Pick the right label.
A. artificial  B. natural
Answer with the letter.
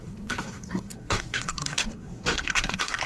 A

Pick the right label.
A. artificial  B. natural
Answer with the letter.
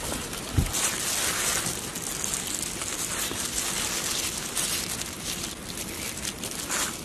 B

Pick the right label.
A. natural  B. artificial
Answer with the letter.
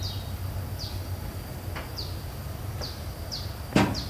A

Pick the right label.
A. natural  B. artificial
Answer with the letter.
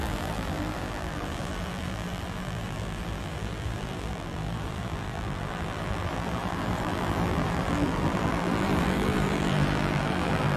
B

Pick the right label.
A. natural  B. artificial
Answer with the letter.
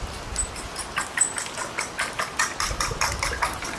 A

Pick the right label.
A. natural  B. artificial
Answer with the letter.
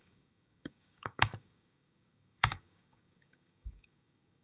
B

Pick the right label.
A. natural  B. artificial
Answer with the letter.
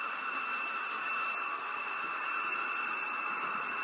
A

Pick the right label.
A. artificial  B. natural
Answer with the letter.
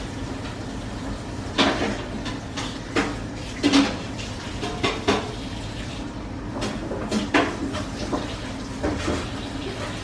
B